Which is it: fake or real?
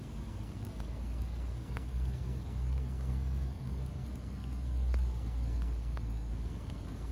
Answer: fake